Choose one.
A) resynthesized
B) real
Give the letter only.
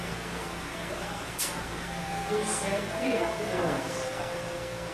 A